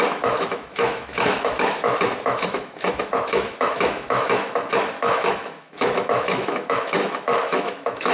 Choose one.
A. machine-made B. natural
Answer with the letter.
A